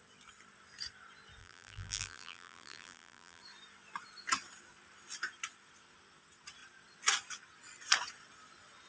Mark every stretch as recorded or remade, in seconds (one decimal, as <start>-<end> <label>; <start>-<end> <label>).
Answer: 0.0-1.4 recorded; 1.4-3.4 remade; 3.4-8.9 recorded